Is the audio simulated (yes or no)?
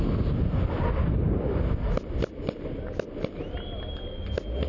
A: no